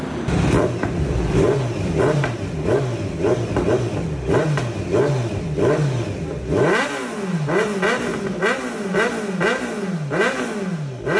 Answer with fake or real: real